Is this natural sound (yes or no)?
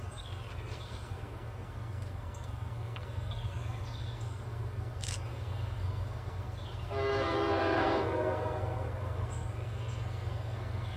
no